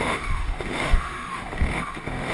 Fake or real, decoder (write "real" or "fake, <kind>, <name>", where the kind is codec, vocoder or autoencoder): fake, autoencoder, DAC-VAE